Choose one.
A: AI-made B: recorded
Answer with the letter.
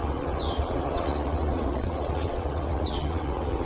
A